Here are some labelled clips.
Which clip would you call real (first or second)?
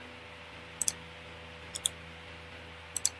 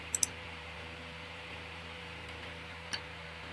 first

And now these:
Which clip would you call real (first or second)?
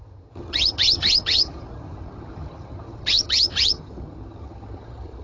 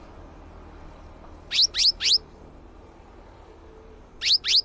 second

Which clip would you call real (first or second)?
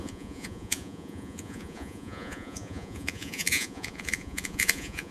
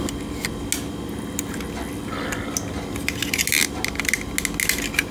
second